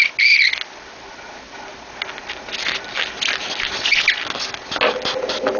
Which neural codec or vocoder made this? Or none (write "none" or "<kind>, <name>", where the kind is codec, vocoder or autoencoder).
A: none